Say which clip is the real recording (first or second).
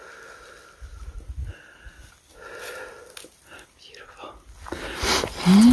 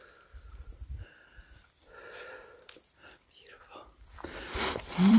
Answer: first